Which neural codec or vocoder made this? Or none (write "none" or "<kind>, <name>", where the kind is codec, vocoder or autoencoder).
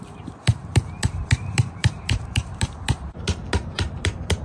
vocoder, BigVGAN v2